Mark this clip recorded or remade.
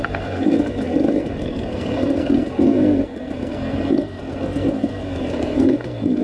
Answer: remade